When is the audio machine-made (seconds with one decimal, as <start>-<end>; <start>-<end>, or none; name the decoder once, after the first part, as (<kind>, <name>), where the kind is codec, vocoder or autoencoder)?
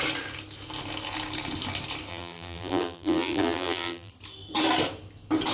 2.1-4.1 (vocoder, BigVGAN v2)